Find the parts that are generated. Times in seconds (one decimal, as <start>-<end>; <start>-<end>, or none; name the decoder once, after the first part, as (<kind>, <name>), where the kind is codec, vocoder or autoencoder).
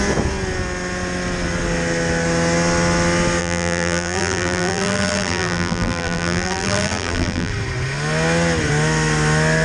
3.4-7.5 (vocoder, BigVGAN v2)